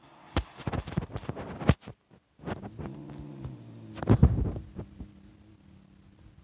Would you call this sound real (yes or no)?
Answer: yes